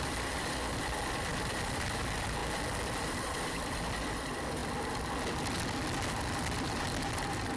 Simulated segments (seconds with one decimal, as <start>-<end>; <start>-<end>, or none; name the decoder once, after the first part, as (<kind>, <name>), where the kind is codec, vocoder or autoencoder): 0.0-2.4 (vocoder, BigVGAN v2); 3.0-4.6; 7.1-7.6